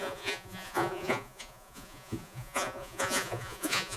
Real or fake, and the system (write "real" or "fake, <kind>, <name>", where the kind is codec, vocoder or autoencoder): fake, vocoder, Vocos